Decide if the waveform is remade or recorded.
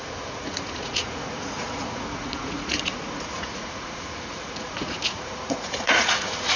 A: remade